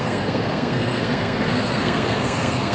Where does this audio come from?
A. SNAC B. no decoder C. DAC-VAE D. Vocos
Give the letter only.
A